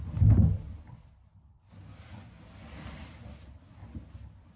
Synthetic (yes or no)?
no